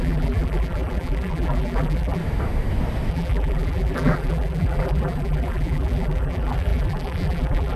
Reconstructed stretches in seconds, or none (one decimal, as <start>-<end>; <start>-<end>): 0.0-2.2; 3.1-7.8